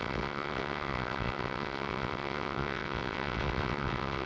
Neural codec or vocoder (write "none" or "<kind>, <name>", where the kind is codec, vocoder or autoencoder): vocoder, WaveNeXt